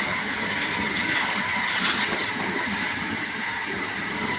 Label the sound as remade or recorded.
remade